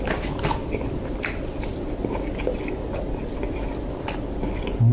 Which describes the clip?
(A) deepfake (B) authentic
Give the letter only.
B